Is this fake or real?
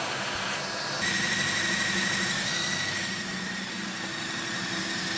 real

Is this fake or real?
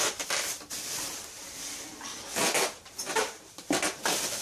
fake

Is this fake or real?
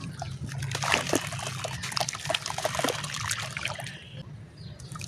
real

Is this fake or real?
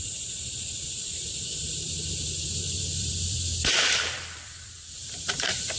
fake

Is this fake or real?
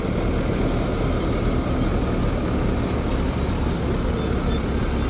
real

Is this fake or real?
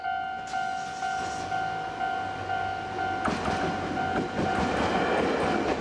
real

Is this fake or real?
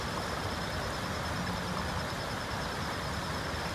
real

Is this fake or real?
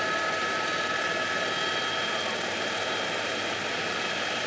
fake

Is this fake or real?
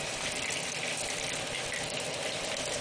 fake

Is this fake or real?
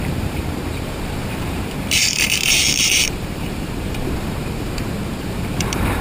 fake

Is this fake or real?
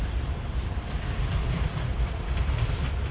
fake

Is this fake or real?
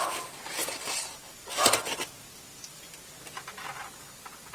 real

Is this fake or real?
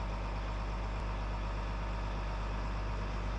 real